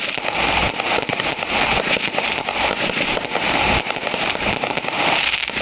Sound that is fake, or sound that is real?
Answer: fake